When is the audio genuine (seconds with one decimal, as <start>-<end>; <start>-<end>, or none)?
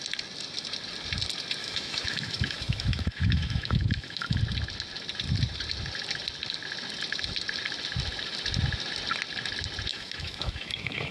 0.0-1.6; 4.4-9.9